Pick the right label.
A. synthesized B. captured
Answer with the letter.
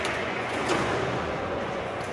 A